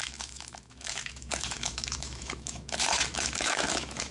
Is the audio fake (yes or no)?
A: yes